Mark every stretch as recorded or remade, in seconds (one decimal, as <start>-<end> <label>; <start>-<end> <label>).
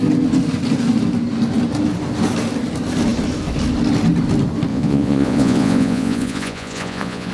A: 0.0-4.7 recorded; 4.7-7.3 remade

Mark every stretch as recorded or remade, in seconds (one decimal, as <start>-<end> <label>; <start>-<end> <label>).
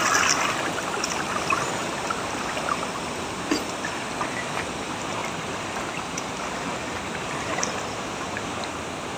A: 0.0-9.2 recorded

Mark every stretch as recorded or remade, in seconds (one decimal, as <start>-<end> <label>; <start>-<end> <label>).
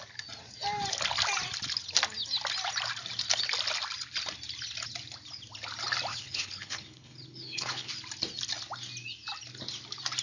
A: 0.0-6.1 recorded; 6.1-7.9 remade; 7.9-10.2 recorded